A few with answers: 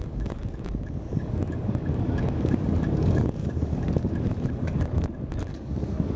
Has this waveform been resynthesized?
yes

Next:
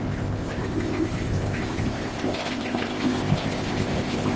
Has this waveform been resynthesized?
yes